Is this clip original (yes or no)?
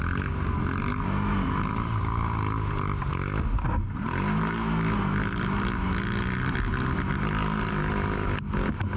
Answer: yes